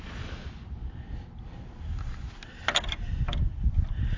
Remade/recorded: recorded